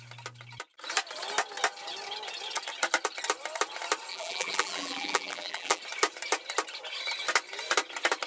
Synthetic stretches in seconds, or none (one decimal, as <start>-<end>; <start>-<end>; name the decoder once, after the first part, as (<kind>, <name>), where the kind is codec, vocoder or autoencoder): 4.1-5.8 (vocoder, BigVGAN v2)